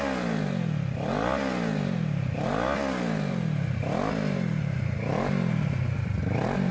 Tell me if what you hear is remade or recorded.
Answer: recorded